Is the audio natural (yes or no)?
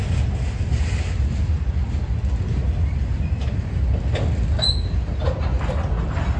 yes